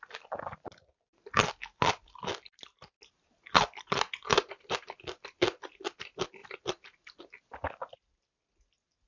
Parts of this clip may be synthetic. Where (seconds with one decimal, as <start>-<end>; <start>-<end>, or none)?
none